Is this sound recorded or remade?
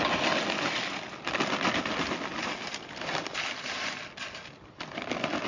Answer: recorded